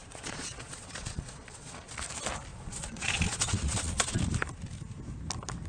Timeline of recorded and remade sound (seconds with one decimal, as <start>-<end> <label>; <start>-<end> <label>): 0.0-1.9 remade; 1.9-2.5 recorded; 2.5-4.2 remade; 4.2-5.7 recorded